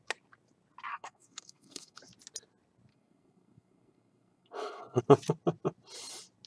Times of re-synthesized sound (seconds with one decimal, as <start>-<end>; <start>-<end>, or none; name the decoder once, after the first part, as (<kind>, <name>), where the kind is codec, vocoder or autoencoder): 0.9-2.0 (codec, SNAC); 2.9-5.0